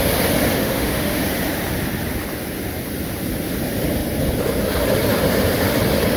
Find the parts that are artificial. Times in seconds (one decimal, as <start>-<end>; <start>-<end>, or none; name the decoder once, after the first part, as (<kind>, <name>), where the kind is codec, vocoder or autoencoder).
0.5-1.2 (autoencoder, DAC-VAE)